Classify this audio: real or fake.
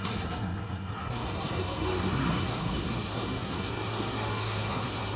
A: fake